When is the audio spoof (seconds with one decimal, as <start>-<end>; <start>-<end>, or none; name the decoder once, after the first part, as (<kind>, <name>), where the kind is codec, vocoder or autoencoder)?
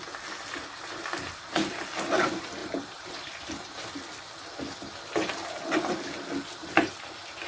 2.6-3.8 (vocoder, BigVGAN v2); 6.6-7.5